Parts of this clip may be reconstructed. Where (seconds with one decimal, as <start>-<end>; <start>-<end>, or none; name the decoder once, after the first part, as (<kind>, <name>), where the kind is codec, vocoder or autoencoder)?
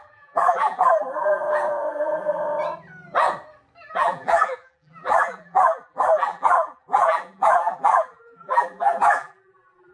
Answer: 0.0-1.4 (vocoder, BigVGAN v2); 1.9-2.4; 3.9-9.9